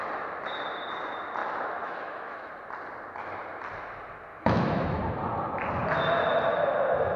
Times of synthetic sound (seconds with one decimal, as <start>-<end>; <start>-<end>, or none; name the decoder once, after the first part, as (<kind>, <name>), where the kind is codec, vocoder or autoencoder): 1.4-2.5 (autoencoder, DAC-VAE); 4.3-5.0